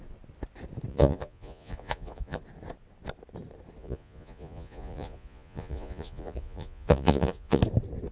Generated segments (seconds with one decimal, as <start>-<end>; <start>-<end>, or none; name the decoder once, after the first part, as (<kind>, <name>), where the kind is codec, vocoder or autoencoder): 0.9-2.4 (vocoder, Vocos); 3.8-7.6